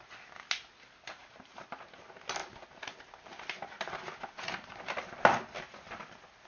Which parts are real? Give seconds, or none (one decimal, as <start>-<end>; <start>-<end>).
0.0-1.1; 1.7-6.5